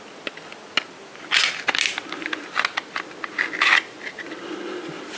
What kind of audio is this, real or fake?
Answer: real